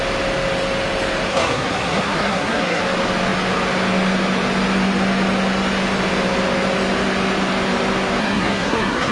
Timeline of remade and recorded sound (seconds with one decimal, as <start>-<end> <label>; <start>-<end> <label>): 0.0-1.3 recorded; 1.3-2.8 remade; 2.8-8.2 recorded; 8.2-9.1 remade